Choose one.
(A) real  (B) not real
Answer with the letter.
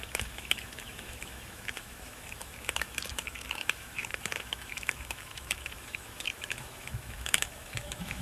B